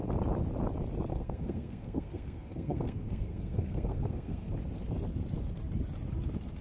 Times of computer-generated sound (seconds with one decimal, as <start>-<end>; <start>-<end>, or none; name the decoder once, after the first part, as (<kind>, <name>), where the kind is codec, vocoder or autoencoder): 1.1-4.5 (codec, SNAC)